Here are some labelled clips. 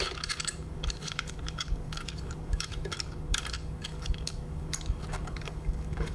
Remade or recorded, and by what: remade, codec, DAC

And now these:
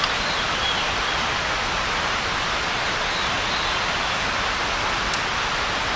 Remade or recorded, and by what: recorded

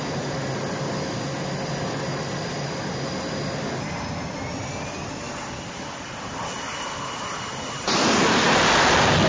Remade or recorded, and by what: recorded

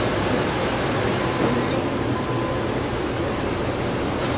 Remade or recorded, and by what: recorded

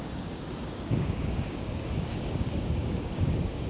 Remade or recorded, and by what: remade, codec, DAC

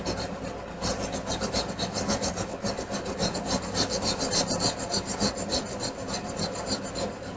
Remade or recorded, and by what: recorded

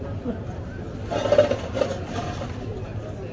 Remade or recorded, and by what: recorded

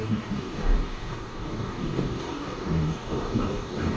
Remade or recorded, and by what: remade, codec, DAC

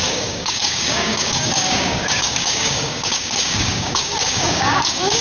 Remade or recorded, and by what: remade, codec, DAC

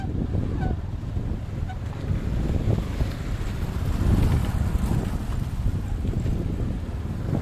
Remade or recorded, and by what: recorded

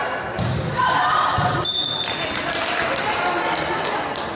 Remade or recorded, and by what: recorded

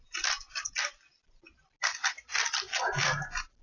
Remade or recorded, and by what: recorded